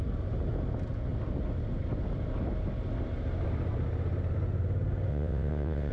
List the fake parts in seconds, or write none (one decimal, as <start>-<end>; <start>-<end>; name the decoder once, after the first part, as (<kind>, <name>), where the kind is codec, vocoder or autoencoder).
5.1-5.9 (vocoder, WaveNeXt)